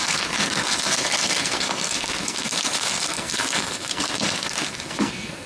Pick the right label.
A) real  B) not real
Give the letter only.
B